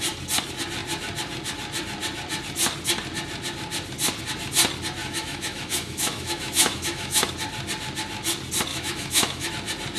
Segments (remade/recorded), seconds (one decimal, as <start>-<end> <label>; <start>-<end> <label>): 0.0-5.0 recorded; 5.0-7.3 remade; 7.3-8.7 recorded; 8.7-9.5 remade; 9.5-10.0 recorded

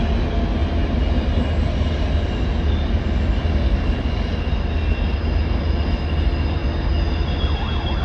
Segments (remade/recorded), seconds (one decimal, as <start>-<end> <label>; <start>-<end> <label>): 0.0-8.0 recorded